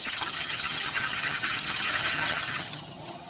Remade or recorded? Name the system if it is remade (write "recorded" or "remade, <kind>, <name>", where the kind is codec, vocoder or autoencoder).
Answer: remade, vocoder, HiFi-GAN